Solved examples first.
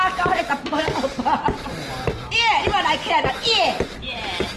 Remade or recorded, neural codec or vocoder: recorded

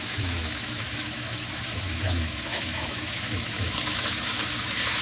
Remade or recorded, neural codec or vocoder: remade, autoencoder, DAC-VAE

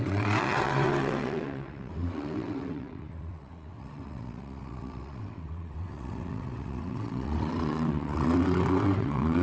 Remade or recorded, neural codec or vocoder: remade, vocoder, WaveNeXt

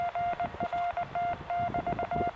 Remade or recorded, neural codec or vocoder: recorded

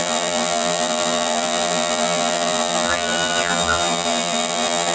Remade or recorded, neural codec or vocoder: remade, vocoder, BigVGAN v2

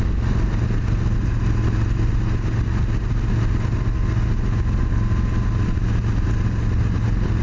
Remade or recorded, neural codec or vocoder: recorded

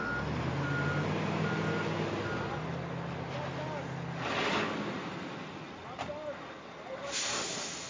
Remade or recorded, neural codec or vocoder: recorded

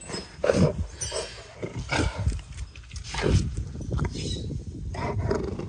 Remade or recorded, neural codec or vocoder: recorded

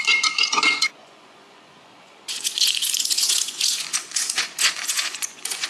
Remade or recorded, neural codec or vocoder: remade, vocoder, Vocos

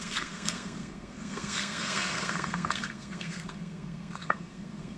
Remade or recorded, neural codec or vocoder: remade, codec, SNAC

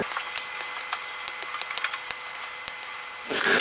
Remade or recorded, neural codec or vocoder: recorded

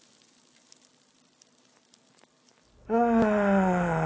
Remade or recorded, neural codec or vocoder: recorded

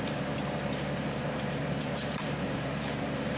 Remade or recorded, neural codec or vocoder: remade, vocoder, BigVGAN v2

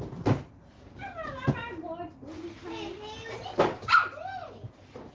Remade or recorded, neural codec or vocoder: recorded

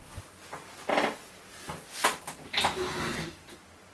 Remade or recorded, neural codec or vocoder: recorded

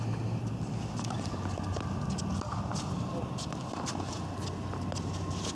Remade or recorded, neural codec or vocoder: recorded